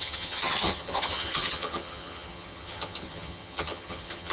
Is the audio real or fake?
fake